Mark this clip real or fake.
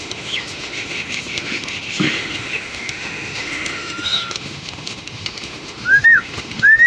fake